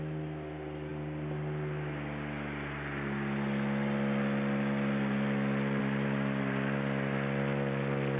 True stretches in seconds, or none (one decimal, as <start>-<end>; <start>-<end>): 0.0-8.2